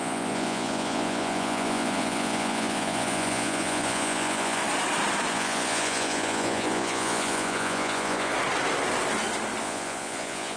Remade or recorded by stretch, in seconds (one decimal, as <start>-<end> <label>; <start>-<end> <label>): 0.0-4.6 remade; 4.6-5.3 recorded; 5.3-8.3 remade; 8.3-9.6 recorded; 9.6-10.6 remade